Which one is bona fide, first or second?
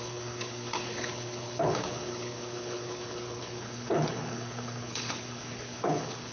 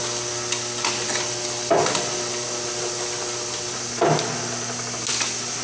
second